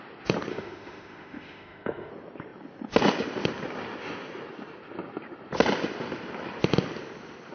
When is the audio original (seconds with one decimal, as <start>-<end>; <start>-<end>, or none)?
0.0-0.5; 2.1-7.5